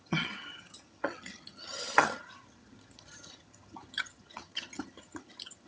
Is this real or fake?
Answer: fake